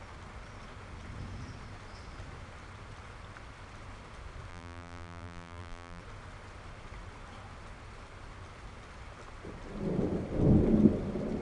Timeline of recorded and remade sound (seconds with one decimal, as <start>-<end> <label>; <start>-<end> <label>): 0.0-4.5 recorded; 4.5-6.0 remade; 6.0-11.4 recorded